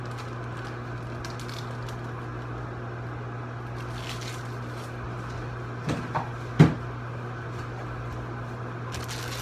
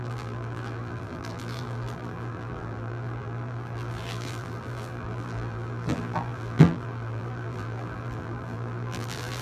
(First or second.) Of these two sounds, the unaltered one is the first